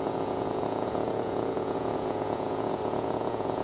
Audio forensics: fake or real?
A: fake